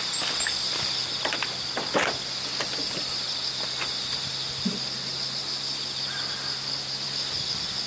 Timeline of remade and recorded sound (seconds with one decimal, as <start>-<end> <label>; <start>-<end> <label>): 0.0-7.9 recorded